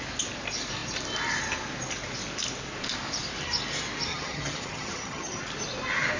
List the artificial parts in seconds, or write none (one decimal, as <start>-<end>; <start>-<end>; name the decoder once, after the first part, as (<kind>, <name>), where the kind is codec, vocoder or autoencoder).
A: 4.1-5.4 (vocoder, HiFi-GAN)